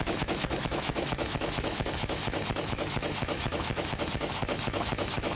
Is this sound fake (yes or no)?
yes